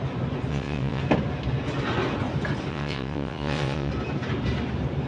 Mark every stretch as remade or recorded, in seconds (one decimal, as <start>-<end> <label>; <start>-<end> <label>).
0.0-0.5 recorded; 0.5-1.0 remade; 1.0-2.7 recorded; 2.7-3.9 remade; 3.9-5.1 recorded